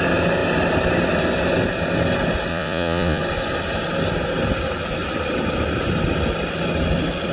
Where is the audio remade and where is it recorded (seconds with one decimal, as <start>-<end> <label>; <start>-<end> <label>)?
0.0-2.5 recorded; 2.5-3.2 remade; 3.2-7.3 recorded